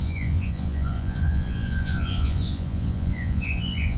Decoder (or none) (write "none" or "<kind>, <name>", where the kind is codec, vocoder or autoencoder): vocoder, Vocos